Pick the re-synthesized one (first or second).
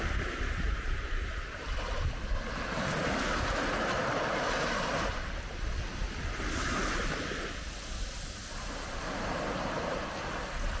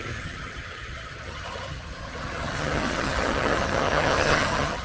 second